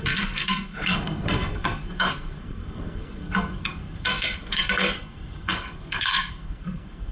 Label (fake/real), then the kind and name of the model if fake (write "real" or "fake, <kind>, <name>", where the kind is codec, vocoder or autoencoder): fake, codec, SNAC